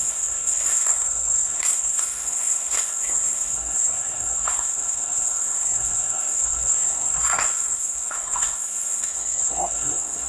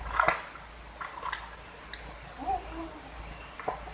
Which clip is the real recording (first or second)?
second